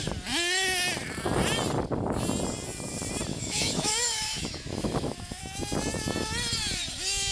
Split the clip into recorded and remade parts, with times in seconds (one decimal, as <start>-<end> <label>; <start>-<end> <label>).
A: 0.0-3.3 recorded; 3.3-5.4 remade; 5.4-7.3 recorded